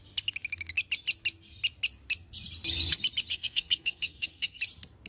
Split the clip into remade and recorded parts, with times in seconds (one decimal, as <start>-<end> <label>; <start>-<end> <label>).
0.0-3.3 recorded; 3.3-4.6 remade; 4.6-5.1 recorded